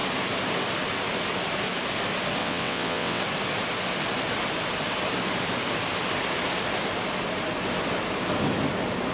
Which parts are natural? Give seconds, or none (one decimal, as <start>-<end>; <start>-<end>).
0.0-2.4; 3.2-9.1